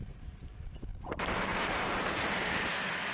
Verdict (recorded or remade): remade